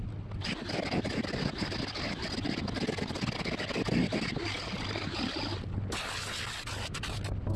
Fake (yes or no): no